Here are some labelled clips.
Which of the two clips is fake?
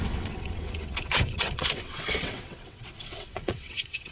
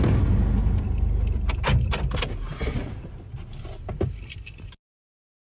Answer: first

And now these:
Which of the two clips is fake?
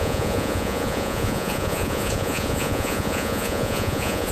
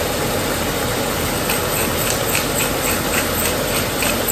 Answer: first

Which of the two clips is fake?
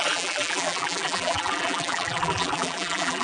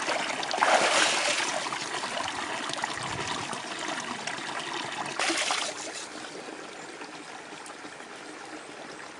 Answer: first